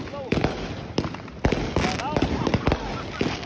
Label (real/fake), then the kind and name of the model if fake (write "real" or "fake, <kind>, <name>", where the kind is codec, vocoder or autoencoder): real